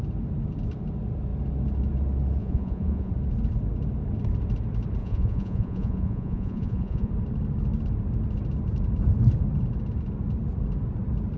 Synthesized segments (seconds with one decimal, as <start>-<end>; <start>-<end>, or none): 2.4-3.1; 5.0-7.1